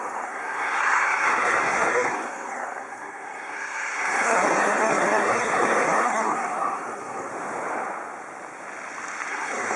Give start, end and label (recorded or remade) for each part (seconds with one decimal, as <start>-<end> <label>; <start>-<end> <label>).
0.0-7.3 remade; 7.3-9.3 recorded; 9.3-9.8 remade